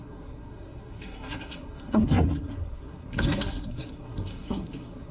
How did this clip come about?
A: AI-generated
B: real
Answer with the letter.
A